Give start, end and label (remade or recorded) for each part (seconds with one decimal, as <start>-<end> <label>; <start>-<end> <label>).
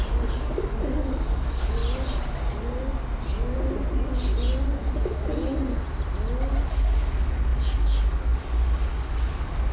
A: 0.0-1.8 remade; 1.8-6.7 recorded; 6.7-9.7 remade